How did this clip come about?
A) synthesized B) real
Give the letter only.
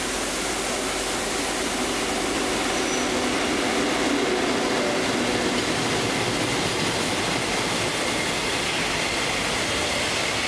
B